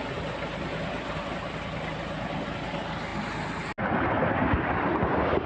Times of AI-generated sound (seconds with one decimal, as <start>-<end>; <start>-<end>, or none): none